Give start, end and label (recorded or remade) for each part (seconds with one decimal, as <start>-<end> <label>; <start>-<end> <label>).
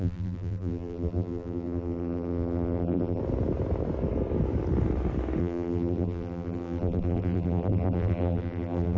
0.0-3.2 remade; 3.2-5.4 recorded; 5.4-9.0 remade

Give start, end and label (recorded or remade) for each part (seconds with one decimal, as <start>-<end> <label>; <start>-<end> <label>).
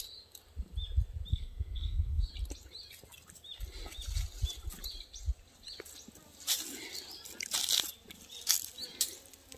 0.0-1.3 recorded; 1.3-2.3 remade; 2.3-9.6 recorded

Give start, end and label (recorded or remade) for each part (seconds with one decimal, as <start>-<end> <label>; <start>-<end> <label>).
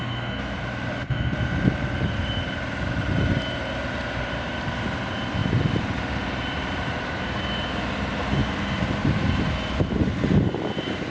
0.0-11.1 remade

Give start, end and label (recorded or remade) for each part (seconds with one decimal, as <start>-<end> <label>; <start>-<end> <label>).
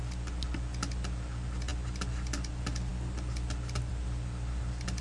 0.0-5.0 recorded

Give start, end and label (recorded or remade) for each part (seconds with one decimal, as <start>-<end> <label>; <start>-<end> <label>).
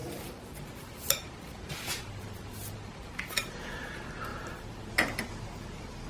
0.0-0.9 remade; 0.9-6.1 recorded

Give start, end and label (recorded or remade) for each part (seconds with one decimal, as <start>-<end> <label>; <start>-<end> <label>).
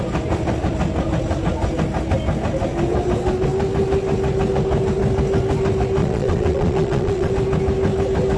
0.0-6.0 recorded; 6.0-7.3 remade; 7.3-8.4 recorded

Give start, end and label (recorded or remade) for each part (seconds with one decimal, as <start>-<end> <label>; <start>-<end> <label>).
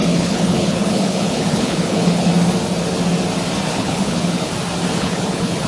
0.0-2.3 remade; 2.3-3.7 recorded; 3.7-4.5 remade; 4.5-5.0 recorded; 5.0-5.7 remade